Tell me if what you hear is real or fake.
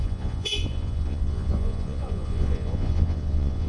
fake